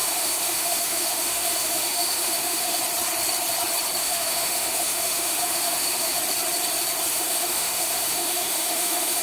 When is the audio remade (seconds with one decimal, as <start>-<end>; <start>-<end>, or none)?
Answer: 0.0-2.8; 4.0-6.2; 7.1-9.2